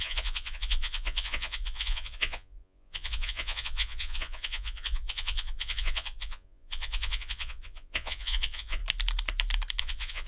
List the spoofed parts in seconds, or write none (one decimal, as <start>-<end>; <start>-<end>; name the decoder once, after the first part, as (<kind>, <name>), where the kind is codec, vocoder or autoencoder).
0.0-8.8 (vocoder, Vocos); 9.8-10.3

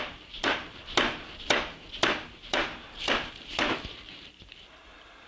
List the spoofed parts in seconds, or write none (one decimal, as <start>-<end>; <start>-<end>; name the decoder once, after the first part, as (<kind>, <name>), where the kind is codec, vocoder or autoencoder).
0.0-0.8 (vocoder, BigVGAN v2); 2.4-5.3

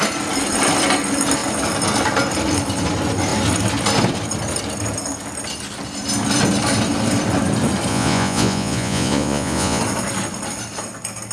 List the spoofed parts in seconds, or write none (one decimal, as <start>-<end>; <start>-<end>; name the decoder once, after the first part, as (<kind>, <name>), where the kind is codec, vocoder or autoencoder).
7.9-9.8 (vocoder, Vocos)